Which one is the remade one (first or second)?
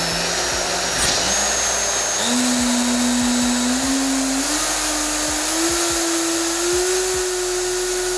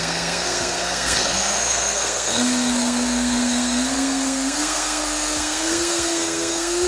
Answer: second